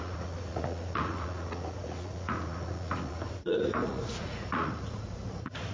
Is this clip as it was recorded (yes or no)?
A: no